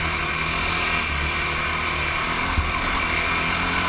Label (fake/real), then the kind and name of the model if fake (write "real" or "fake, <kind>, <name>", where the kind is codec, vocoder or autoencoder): real